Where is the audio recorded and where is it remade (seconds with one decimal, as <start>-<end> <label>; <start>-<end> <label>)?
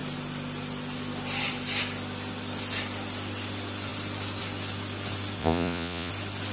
0.0-5.4 recorded; 5.4-6.1 remade; 6.1-6.5 recorded